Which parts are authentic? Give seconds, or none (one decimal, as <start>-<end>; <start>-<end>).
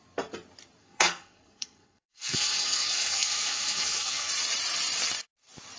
0.0-0.8; 4.3-5.8